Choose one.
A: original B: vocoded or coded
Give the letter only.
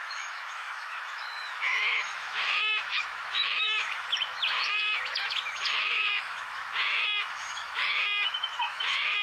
B